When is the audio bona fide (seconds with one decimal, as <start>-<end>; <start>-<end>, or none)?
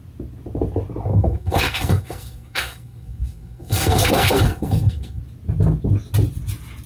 0.0-1.1; 5.2-6.9